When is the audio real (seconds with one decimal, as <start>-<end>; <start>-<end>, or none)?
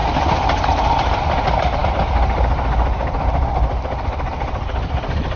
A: 0.0-5.4